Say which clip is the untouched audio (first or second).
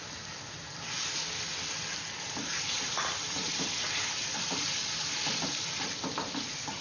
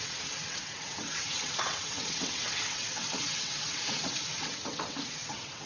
first